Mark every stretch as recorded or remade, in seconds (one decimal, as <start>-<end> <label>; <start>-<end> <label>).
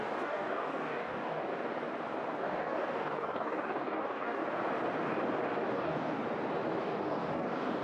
0.0-1.5 remade; 1.5-2.4 recorded; 2.4-4.4 remade; 4.4-5.7 recorded; 5.7-6.2 remade; 6.2-6.8 recorded; 6.8-7.8 remade